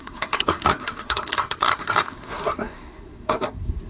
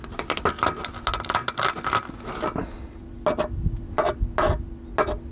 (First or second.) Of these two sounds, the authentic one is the second